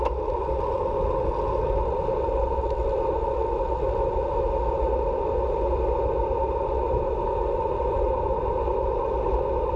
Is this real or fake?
real